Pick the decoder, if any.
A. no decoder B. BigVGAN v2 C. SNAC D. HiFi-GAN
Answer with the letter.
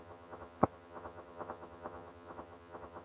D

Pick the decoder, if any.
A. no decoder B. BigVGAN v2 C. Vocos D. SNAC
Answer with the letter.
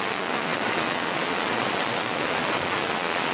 C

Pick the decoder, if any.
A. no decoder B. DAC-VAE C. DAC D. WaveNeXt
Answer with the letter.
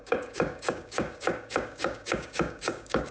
C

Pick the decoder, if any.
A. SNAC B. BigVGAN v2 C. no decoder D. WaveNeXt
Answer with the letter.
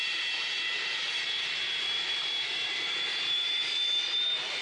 B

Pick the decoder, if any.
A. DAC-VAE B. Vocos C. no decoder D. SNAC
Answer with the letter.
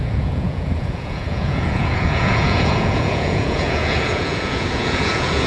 B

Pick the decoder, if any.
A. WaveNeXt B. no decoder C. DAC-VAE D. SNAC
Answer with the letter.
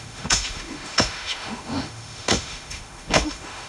C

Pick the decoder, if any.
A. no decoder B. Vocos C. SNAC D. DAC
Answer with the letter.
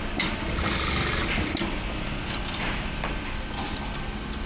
A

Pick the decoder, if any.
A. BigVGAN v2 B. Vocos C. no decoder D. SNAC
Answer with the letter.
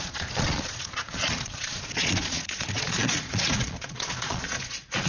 B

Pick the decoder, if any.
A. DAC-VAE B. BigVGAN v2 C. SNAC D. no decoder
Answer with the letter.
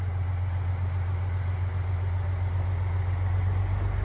D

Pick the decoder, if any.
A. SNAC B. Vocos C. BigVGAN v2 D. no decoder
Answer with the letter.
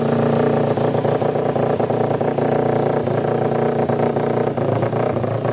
D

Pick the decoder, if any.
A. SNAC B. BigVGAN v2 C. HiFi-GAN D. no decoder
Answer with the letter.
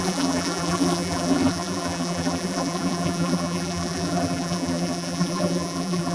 B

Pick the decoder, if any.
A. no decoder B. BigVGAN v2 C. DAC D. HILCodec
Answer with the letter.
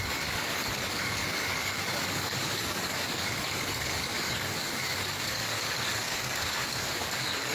C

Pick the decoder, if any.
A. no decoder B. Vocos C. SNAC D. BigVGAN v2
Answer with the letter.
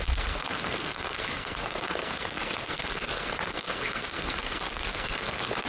C